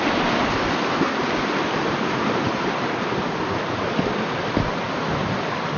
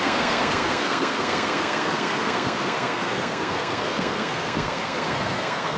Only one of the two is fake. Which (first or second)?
second